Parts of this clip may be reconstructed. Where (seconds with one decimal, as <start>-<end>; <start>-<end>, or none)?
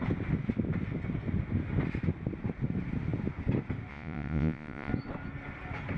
3.9-4.9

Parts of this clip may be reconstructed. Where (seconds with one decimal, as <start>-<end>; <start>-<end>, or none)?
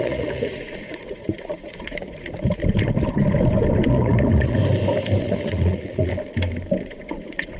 0.0-2.6; 3.9-4.6; 5.2-6.1; 6.8-7.6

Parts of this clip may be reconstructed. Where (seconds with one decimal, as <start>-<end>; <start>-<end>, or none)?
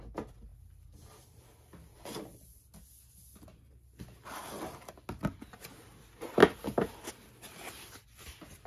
none